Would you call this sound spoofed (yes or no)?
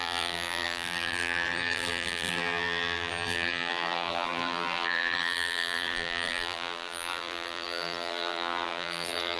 yes